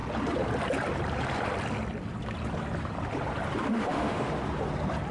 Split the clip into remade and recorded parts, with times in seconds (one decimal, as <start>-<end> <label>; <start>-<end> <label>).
0.0-3.7 recorded; 3.7-4.3 remade; 4.3-5.1 recorded